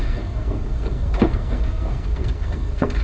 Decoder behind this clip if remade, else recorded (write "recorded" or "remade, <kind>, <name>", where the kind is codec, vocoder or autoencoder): remade, codec, SNAC